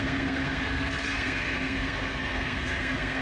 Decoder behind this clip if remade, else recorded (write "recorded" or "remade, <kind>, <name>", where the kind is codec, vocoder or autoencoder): remade, codec, SNAC